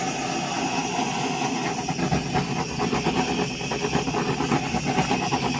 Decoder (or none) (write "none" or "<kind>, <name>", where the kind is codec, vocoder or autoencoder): none